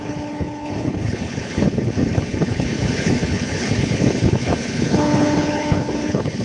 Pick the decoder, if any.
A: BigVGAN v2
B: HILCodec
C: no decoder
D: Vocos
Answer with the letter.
B